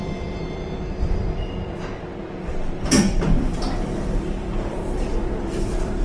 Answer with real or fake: fake